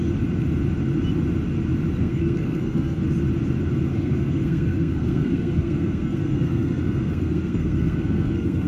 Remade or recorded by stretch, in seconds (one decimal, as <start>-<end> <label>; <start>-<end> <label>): 0.0-2.0 recorded; 2.0-3.0 remade; 3.0-3.9 recorded; 3.9-8.7 remade